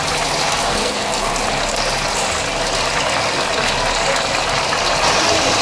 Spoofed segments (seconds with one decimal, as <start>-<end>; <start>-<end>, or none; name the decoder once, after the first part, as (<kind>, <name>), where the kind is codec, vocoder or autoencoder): 0.7-1.3 (codec, SNAC)